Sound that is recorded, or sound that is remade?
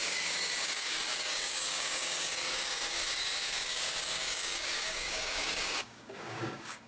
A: remade